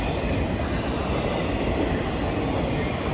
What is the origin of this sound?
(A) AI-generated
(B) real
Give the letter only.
B